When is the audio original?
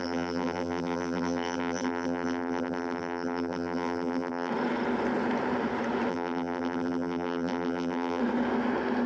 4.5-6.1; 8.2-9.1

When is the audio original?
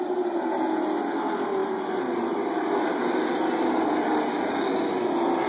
0.0-5.5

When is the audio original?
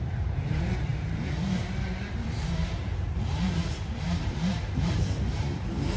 none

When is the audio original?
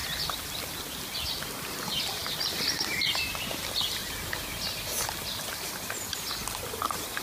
0.0-1.7; 4.0-5.5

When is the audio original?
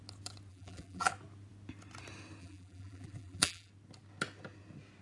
0.0-0.5; 1.1-2.4; 3.7-5.0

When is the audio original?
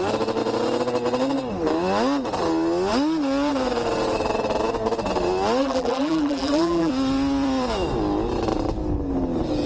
0.0-5.6; 6.9-9.7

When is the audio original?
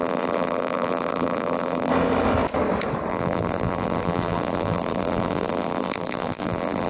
1.9-3.1